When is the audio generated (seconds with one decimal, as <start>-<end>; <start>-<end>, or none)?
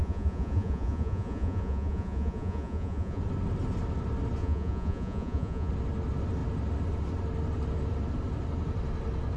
0.0-3.2; 4.4-5.7